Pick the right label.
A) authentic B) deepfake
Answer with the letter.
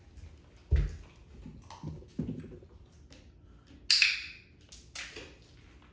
A